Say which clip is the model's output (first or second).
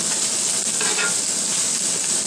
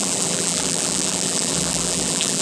second